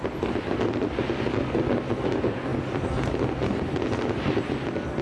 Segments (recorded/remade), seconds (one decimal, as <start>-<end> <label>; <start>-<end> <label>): 0.0-5.0 recorded